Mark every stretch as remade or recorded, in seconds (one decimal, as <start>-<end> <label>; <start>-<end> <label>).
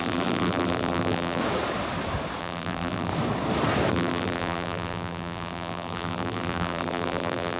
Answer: 0.0-1.4 remade; 1.4-2.4 recorded; 2.4-3.1 remade; 3.1-3.9 recorded; 3.9-7.6 remade